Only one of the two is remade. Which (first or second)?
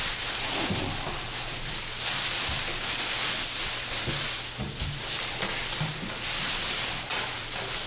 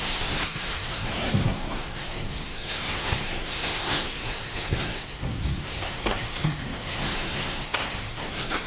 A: second